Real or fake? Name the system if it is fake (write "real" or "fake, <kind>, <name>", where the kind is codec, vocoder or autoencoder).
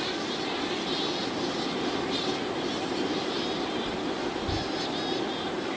real